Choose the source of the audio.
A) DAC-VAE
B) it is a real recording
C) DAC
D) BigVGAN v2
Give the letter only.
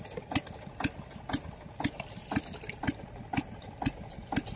B